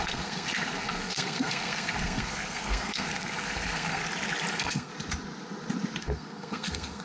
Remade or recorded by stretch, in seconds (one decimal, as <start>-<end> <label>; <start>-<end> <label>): 0.0-4.0 remade; 4.0-4.5 recorded; 4.5-4.9 remade; 4.9-6.0 recorded; 6.0-7.0 remade